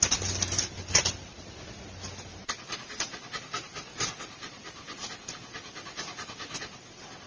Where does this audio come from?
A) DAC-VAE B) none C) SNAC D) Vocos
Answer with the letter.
B